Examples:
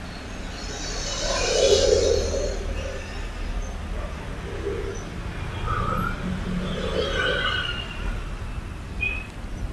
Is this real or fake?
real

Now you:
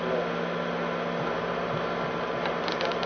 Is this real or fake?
real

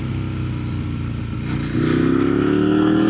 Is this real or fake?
real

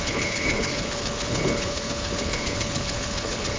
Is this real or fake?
fake